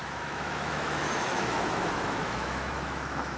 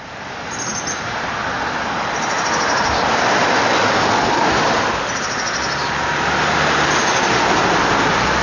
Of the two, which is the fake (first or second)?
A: first